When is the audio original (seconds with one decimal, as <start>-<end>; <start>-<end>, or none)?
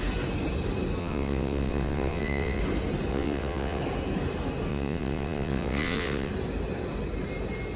0.0-1.0; 2.6-3.1; 3.8-4.7; 6.3-7.8